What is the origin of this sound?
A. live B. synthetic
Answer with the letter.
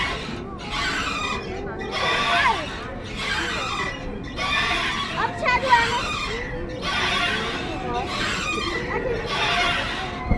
A